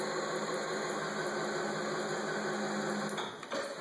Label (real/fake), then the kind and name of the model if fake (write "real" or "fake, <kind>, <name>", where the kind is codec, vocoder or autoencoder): real